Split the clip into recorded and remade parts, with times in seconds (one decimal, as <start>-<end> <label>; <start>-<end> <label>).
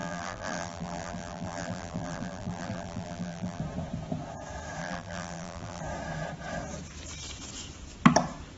0.0-3.6 remade; 3.6-4.8 recorded; 4.8-5.8 remade; 5.8-8.6 recorded